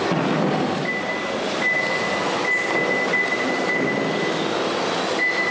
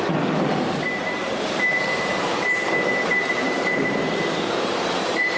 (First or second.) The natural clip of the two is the first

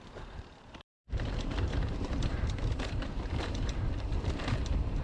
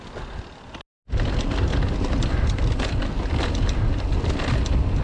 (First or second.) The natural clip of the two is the second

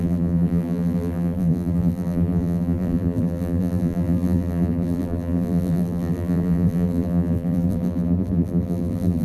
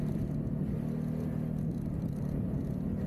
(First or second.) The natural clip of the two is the second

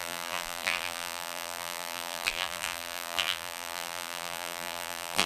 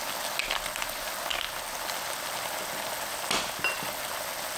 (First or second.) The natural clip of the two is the second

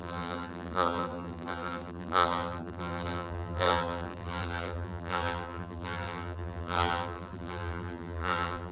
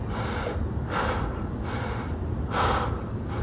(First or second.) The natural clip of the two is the second